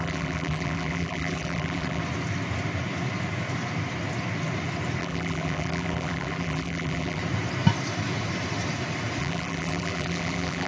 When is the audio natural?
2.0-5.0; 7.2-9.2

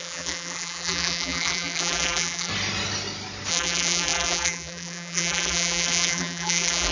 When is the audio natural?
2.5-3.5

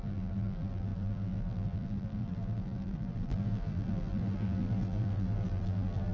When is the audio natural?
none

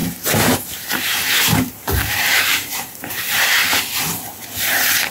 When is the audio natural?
3.5-5.1

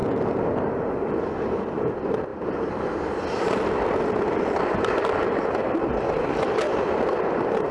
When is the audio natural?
0.0-2.3; 4.7-7.7

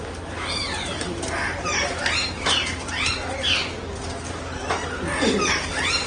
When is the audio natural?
0.0-6.1